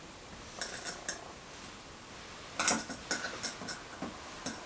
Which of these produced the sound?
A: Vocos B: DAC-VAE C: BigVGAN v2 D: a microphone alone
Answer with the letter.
D